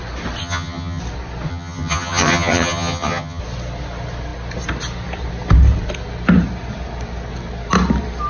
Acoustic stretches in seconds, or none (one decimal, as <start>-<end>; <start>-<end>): 0.0-0.4; 1.0-1.5; 3.4-8.3